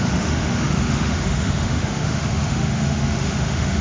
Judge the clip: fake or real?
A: fake